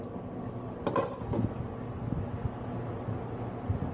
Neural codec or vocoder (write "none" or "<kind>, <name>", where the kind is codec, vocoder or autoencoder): none